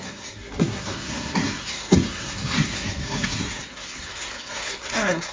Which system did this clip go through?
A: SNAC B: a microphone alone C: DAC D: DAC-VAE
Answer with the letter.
A